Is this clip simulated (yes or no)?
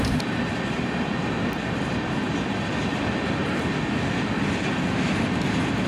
no